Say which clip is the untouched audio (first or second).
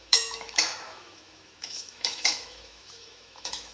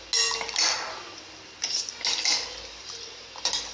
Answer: second